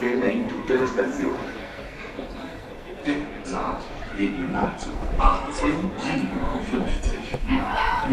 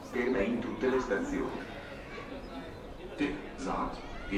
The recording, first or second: second